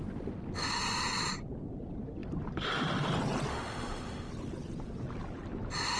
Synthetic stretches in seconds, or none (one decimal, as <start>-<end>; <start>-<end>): 3.5-4.3